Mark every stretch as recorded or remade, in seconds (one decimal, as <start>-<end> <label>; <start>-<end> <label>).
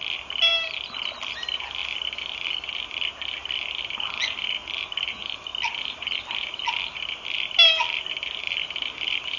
0.0-9.4 recorded